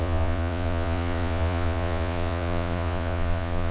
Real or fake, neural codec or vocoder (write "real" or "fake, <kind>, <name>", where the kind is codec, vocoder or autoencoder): fake, vocoder, Vocos